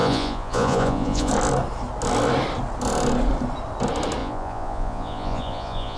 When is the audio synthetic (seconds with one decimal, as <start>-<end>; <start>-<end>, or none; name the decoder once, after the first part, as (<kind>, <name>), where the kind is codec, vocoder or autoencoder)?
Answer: 0.0-1.3 (vocoder, Vocos); 4.2-6.0